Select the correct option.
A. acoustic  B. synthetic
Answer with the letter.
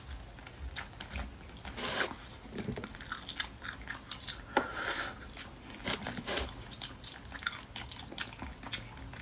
A